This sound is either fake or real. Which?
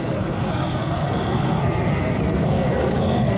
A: fake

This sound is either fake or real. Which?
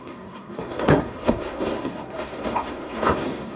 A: fake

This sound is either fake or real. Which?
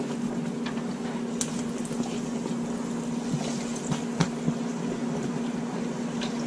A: real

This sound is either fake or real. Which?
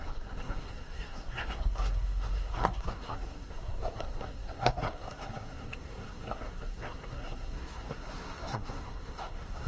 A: fake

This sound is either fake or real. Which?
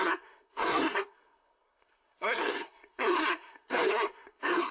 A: fake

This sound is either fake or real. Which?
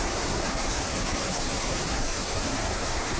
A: fake